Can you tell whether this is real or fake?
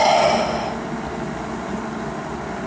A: real